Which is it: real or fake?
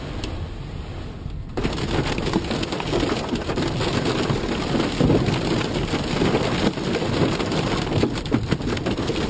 real